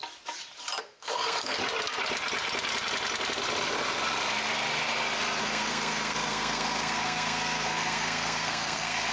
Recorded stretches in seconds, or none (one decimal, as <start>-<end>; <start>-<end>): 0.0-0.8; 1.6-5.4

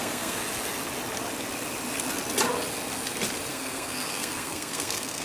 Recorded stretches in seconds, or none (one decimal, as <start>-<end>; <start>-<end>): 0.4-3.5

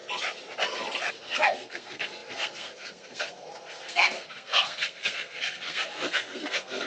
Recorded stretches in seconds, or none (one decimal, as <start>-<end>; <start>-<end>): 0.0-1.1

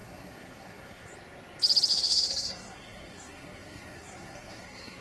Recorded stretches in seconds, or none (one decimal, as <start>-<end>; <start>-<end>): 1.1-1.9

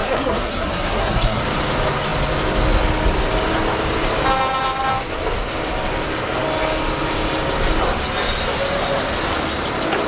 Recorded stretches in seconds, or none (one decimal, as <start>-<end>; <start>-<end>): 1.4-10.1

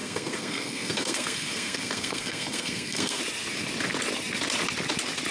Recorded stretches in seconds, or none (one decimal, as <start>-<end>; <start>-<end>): 3.2-5.3